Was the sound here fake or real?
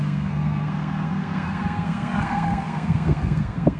fake